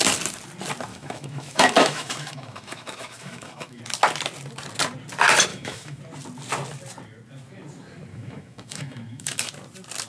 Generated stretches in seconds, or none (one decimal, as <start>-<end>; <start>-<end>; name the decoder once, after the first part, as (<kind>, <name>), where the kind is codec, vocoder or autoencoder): 0.9-3.8 (autoencoder, DAC-VAE); 5.5-6.0; 8.1-9.5